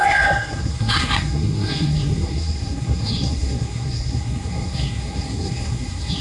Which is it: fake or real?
fake